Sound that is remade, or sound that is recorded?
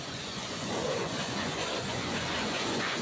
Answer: remade